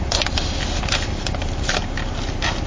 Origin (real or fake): real